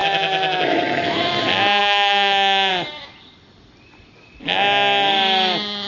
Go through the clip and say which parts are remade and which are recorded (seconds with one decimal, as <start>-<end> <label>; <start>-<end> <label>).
0.0-1.4 remade; 1.4-1.8 recorded; 1.8-2.7 remade; 2.7-5.9 recorded